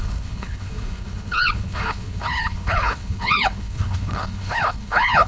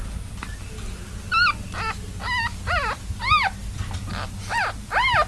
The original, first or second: second